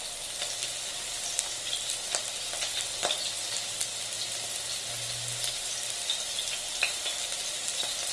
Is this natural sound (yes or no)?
yes